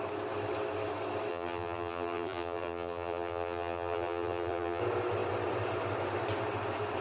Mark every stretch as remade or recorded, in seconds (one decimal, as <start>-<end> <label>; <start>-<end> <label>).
0.0-1.3 recorded; 1.3-4.8 remade; 4.8-7.0 recorded